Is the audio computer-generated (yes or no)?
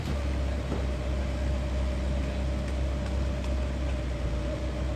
no